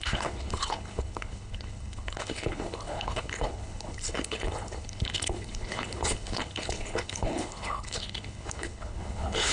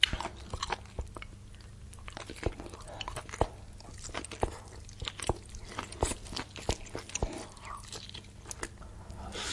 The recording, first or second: second